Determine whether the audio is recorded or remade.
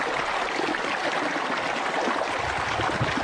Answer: recorded